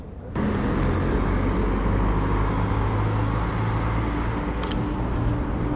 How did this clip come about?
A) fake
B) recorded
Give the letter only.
B